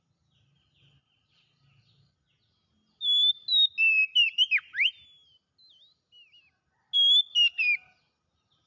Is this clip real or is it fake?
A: real